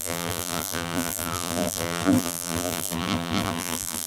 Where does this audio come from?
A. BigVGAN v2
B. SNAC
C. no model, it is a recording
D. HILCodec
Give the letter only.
A